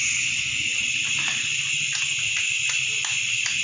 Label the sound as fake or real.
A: real